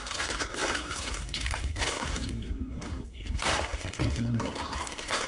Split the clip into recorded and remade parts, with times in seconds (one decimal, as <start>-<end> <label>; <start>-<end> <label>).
0.0-5.3 remade